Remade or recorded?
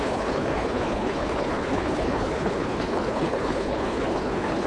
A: remade